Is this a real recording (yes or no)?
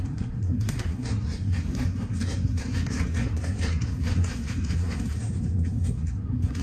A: no